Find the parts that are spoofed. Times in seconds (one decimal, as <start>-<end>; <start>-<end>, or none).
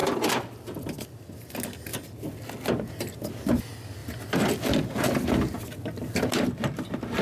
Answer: 0.0-1.3; 4.0-4.8